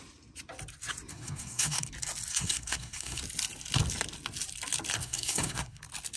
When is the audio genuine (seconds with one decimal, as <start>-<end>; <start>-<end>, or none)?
0.0-1.1; 1.9-2.3; 3.2-5.0; 5.8-6.2